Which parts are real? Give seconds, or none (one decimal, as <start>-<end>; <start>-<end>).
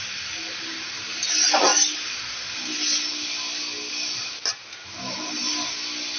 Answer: 0.0-6.2